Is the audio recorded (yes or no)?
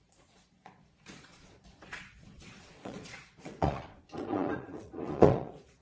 no